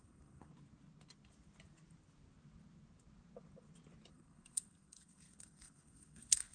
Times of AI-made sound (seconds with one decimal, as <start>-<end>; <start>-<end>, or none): 0.0-0.5; 4.1-6.5